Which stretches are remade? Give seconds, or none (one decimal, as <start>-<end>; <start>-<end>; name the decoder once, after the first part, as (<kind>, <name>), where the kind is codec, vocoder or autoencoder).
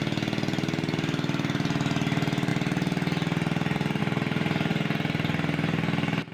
none